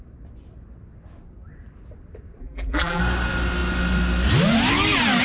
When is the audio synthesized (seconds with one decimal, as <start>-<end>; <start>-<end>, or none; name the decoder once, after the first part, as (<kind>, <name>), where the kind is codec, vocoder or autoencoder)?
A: 2.4-3.0 (vocoder, BigVGAN v2)